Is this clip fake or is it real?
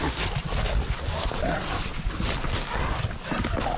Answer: real